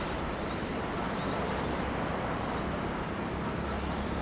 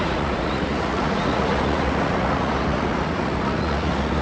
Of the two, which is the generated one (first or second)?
second